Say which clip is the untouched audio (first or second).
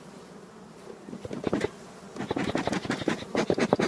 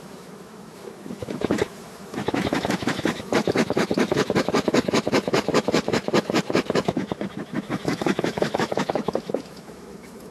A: first